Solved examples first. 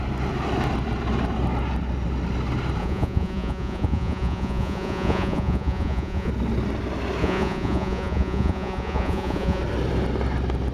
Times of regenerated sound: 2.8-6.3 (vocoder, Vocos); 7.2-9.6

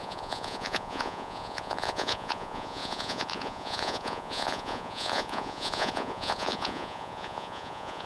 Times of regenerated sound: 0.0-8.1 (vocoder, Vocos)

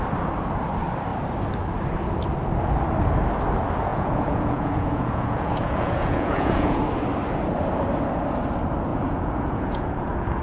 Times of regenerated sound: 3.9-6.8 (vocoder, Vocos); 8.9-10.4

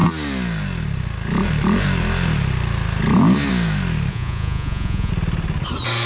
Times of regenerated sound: 4.1-5.1 (vocoder, Vocos)

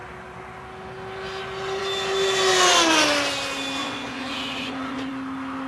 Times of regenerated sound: 3.8-5.1 (vocoder, Vocos)